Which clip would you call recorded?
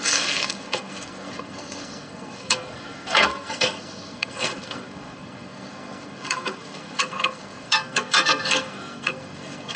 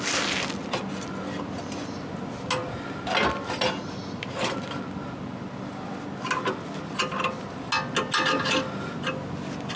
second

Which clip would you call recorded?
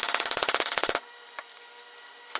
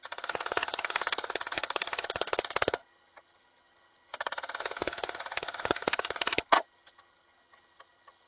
first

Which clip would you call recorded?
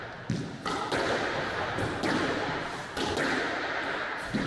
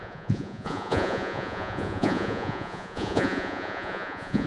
first